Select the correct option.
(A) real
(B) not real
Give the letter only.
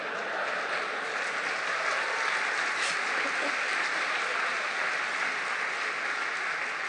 A